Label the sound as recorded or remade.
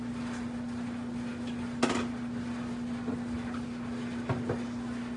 recorded